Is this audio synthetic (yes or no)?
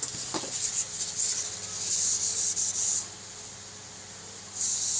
no